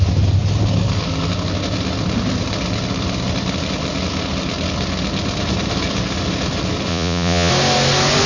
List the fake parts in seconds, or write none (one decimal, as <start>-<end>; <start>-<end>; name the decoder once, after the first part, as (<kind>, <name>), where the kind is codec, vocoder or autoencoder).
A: 6.9-7.5 (vocoder, Vocos)